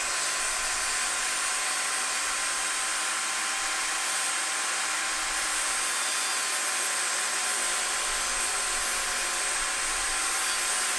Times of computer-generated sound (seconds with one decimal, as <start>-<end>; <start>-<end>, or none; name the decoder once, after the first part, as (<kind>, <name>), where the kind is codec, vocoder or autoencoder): none